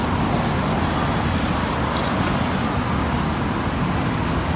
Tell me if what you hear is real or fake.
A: real